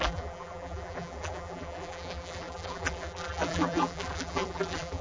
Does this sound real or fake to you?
fake